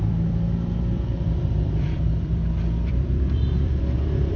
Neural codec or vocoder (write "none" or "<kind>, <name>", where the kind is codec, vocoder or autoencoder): vocoder, BigVGAN v2